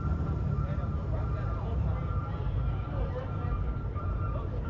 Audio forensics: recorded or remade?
remade